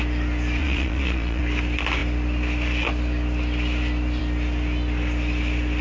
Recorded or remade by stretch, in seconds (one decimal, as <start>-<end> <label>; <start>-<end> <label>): 0.0-0.6 recorded; 0.6-1.4 remade; 1.4-5.8 recorded